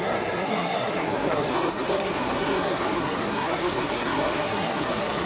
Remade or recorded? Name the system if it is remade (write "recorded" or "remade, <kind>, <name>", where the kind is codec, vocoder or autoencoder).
remade, codec, SNAC